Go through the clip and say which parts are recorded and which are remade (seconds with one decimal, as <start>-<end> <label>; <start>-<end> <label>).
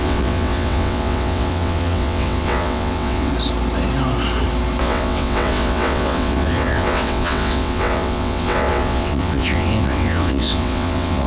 0.0-3.3 remade; 3.3-4.8 recorded; 4.8-11.3 remade